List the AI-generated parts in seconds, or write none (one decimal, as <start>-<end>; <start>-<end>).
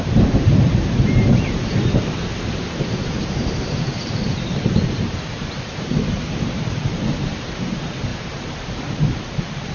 0.0-9.7